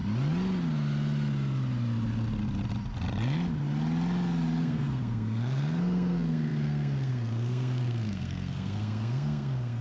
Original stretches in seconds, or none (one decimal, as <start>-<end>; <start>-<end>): 0.0-4.6